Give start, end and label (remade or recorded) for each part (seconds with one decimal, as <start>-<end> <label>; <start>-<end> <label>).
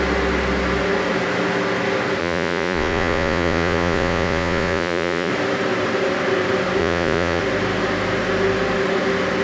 0.0-2.2 recorded; 2.2-5.3 remade; 5.3-6.8 recorded; 6.8-7.4 remade; 7.4-9.4 recorded